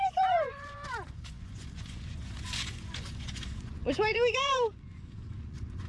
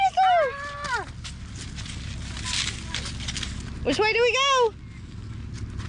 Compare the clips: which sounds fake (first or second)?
first